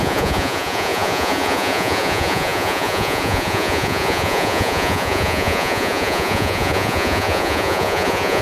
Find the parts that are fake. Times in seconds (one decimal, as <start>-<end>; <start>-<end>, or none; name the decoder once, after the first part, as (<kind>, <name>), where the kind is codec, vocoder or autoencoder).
0.0-8.4 (vocoder, Vocos)